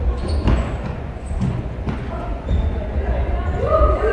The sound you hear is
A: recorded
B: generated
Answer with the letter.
B